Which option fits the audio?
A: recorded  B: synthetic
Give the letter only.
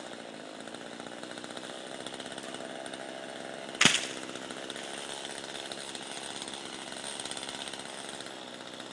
A